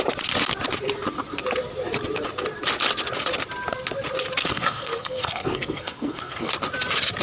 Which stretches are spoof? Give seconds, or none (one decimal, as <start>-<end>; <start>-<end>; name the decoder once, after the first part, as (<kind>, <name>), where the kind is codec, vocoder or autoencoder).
4.4-6.5 (codec, SNAC)